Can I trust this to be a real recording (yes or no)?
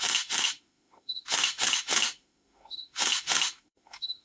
no